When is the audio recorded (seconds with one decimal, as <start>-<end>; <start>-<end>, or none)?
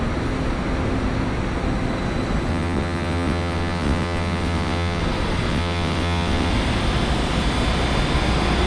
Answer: 0.0-2.5; 5.0-5.5; 6.5-8.7